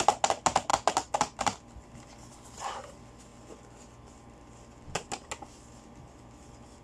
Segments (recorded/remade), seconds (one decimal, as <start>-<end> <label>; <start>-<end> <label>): 0.0-6.8 recorded